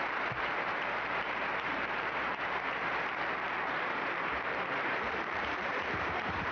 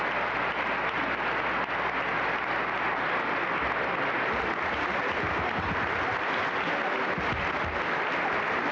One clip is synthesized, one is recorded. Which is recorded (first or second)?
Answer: second